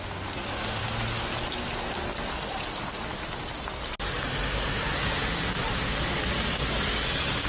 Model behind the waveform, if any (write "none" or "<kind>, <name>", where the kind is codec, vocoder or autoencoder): none